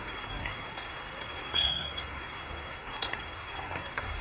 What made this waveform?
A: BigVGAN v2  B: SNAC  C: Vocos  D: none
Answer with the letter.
B